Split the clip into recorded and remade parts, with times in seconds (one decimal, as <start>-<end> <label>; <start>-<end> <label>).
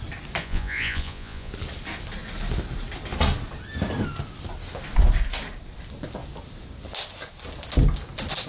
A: 0.0-0.4 recorded; 0.4-1.5 remade; 1.5-8.5 recorded